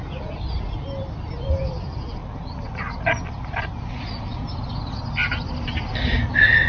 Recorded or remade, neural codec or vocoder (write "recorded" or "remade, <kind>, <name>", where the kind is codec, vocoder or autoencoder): recorded